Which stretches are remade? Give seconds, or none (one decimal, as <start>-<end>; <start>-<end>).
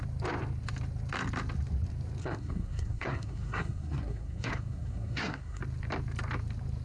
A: 2.2-5.6